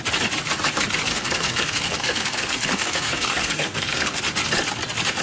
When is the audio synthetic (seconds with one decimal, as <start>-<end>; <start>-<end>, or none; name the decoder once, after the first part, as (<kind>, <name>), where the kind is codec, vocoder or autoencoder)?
1.1-4.2 (codec, SNAC)